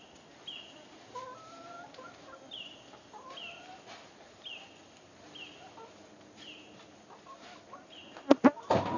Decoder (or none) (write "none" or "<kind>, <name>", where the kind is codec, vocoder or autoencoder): none